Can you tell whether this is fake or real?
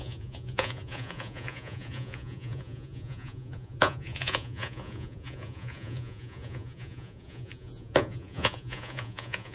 fake